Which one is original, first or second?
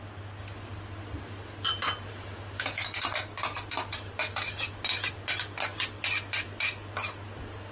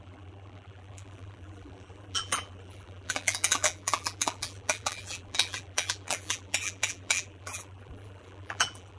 first